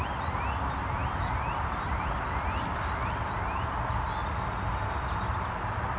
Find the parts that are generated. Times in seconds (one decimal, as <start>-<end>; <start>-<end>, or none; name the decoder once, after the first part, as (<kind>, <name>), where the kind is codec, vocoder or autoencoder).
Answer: none